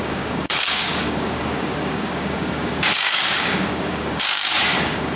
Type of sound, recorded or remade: remade